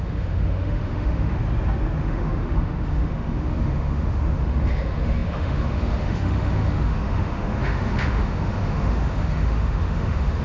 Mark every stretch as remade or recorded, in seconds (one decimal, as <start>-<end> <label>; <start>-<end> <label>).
0.0-1.4 remade; 1.4-2.0 recorded; 2.0-10.4 remade